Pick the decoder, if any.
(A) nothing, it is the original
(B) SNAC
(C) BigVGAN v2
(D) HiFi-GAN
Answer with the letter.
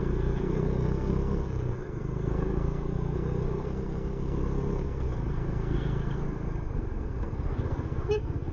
B